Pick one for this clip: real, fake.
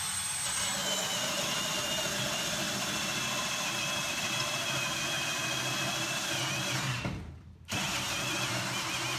real